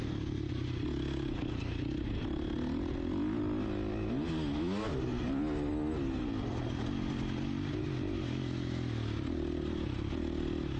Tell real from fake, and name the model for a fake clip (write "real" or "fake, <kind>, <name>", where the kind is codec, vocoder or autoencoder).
real